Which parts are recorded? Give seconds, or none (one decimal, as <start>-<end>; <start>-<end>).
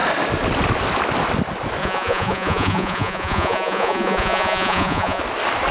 0.0-1.8; 5.2-5.7